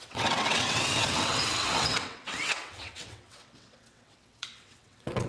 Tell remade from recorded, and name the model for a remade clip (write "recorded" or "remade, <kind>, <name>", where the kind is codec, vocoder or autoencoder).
remade, vocoder, WaveNeXt